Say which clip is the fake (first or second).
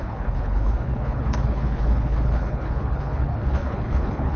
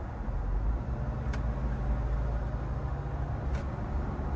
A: first